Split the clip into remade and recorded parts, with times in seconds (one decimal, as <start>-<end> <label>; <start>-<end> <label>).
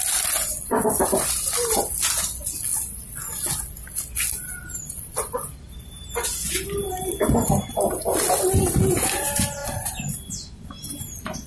0.0-2.7 recorded; 2.7-3.4 remade; 3.4-4.4 recorded; 4.4-4.9 remade; 4.9-9.6 recorded; 9.6-10.3 remade; 10.3-11.5 recorded